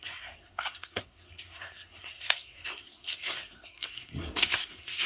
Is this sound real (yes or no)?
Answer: no